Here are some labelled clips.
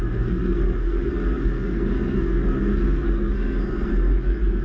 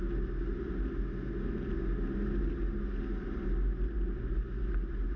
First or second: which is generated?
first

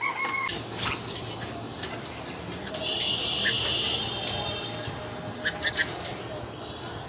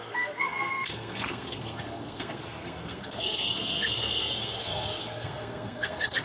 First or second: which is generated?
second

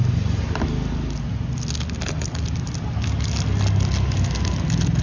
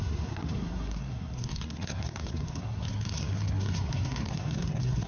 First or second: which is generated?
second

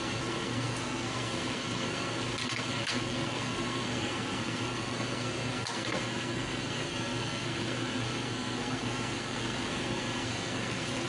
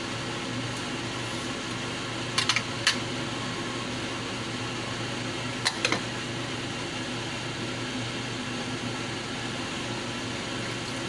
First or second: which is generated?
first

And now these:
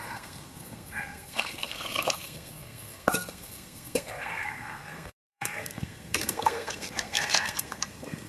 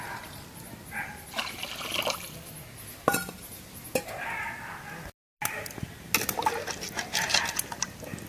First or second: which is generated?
first